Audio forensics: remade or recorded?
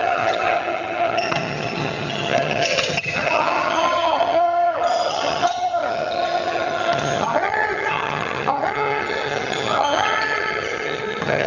remade